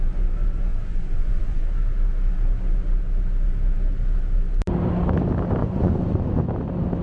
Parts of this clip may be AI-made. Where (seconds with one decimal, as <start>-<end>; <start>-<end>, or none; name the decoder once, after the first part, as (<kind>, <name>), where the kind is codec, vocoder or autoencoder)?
0.7-1.6 (vocoder, Vocos); 5.6-6.4